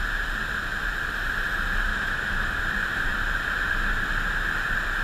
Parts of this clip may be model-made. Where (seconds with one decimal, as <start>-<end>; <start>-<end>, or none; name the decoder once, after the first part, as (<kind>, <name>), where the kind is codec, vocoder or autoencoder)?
1.9-2.6 (autoencoder, DAC-VAE)